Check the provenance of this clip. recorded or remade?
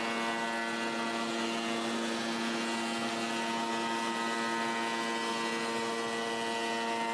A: recorded